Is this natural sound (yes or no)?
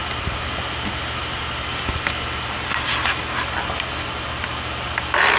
yes